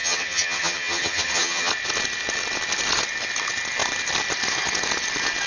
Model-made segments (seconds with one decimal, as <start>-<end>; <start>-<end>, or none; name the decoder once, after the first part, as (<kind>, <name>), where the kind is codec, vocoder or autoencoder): 0.0-1.7 (vocoder, HiFi-GAN)